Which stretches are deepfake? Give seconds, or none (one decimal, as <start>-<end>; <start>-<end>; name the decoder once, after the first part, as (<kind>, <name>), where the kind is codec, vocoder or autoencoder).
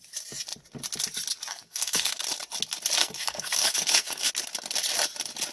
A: 1.5-2.2 (codec, SNAC); 3.0-4.3